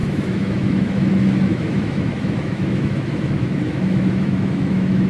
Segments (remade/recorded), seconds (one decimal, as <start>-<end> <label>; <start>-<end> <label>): 0.0-5.1 remade